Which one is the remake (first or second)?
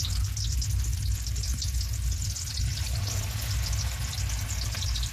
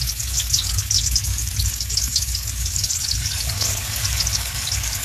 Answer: second